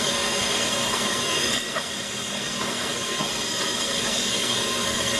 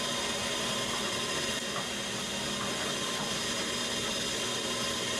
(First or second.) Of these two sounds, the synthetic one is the first